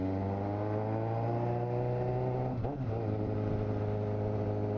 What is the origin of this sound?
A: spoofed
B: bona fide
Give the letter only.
B